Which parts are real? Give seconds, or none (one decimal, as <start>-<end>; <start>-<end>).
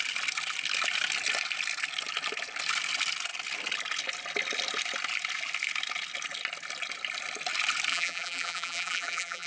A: 0.0-7.9